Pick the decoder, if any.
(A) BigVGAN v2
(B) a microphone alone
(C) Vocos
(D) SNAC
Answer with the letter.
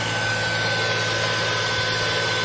B